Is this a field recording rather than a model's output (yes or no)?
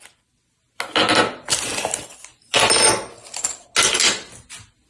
yes